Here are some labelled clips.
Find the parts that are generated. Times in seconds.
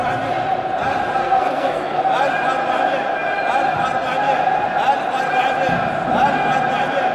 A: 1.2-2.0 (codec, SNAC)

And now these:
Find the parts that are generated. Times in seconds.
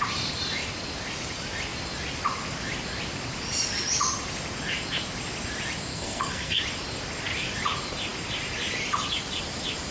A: 5.9-6.6 (codec, SNAC)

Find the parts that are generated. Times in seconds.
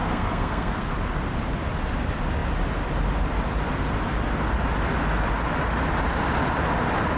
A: 0.0-0.9 (codec, SNAC)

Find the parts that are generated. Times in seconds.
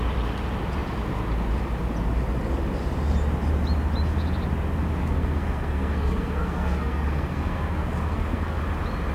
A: 5.0-8.6 (codec, SNAC)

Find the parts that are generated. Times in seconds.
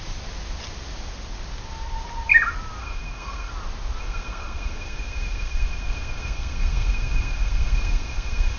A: 2.8-3.5 (codec, SNAC); 4.0-8.6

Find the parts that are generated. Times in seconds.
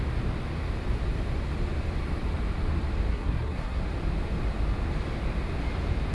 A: 3.1-3.8 (codec, SNAC)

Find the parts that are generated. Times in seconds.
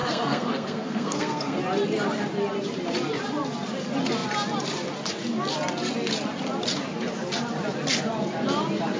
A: 0.0-1.6 (codec, SNAC)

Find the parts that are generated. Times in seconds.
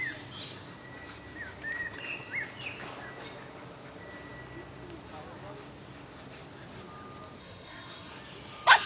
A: 7.4-8.1 (codec, SNAC)